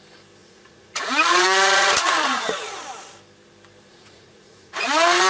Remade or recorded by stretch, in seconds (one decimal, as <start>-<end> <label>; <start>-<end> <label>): 0.0-0.4 recorded; 0.4-2.6 remade; 2.6-3.9 recorded; 3.9-5.3 remade